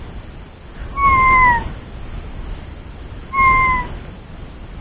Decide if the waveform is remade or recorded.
recorded